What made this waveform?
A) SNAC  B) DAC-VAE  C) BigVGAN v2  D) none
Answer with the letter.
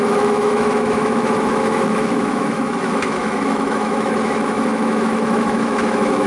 B